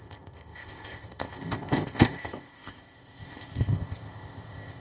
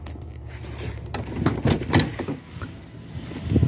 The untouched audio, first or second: second